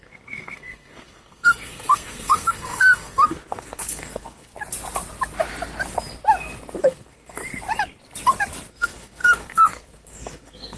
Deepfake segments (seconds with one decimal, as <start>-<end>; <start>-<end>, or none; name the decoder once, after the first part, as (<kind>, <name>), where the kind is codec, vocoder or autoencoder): 0.0-4.5 (codec, SNAC); 6.8-7.4; 8.7-10.8